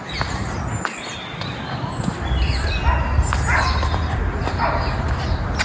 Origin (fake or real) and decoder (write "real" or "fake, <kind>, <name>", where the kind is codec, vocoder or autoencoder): real